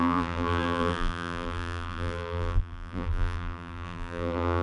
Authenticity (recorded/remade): remade